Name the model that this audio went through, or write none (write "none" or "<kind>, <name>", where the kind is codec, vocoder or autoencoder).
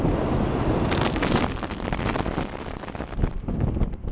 none